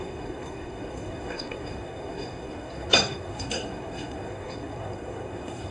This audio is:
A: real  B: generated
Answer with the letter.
B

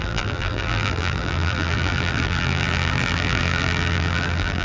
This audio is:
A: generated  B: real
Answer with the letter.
A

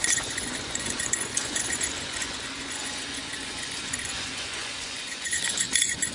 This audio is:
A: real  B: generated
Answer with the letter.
B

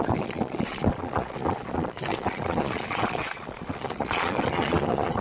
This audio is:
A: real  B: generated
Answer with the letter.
B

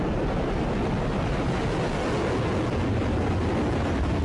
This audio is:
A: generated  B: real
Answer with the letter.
B